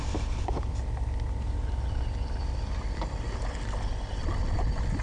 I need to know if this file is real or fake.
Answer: real